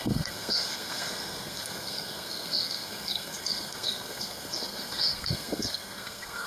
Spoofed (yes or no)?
yes